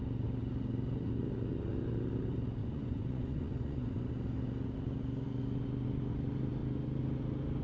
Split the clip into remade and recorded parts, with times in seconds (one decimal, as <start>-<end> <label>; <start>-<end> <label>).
0.0-2.6 recorded; 2.6-4.1 remade; 4.1-7.6 recorded